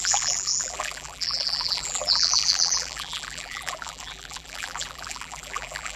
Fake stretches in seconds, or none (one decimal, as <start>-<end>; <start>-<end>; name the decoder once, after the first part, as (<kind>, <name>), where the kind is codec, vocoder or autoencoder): 0.0-6.0 (vocoder, BigVGAN v2)

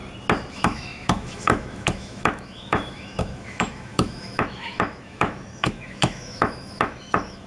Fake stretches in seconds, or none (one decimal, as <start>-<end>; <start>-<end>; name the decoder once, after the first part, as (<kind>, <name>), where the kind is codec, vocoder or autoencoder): 0.5-7.5 (autoencoder, DAC-VAE)